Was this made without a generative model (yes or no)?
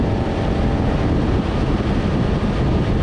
yes